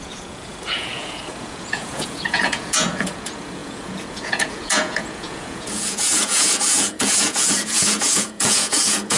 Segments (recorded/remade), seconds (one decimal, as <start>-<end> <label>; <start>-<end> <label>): 0.0-9.2 remade